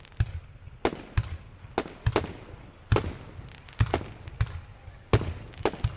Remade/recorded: recorded